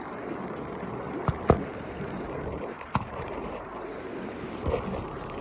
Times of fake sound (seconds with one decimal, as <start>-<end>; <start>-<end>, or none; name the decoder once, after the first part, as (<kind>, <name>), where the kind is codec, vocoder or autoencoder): 1.7-3.7 (vocoder, BigVGAN v2)